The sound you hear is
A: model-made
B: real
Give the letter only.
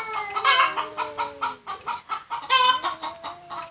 B